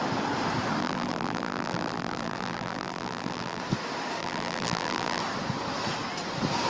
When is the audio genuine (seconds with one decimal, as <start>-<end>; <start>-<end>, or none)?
0.0-0.8; 3.6-4.2; 5.2-6.7